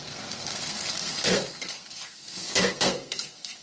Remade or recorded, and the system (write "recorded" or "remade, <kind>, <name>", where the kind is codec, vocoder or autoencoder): remade, codec, SNAC